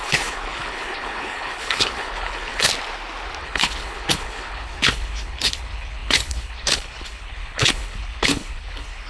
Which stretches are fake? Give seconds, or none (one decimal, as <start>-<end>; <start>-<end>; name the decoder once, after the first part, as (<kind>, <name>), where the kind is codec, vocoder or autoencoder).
0.0-2.7 (codec, HILCodec); 3.4-9.1